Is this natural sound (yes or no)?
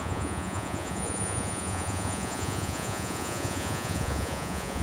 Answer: no